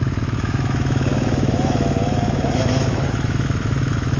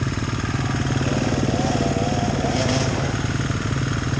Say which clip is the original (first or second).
second